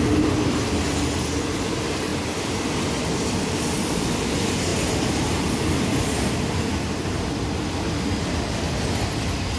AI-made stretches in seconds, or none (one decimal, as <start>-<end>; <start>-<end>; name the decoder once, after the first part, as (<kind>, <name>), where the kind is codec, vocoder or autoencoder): none